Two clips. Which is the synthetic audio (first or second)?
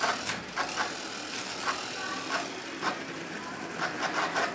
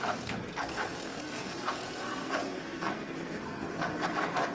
second